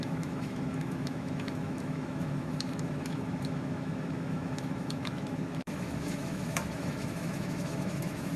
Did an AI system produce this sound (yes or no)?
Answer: yes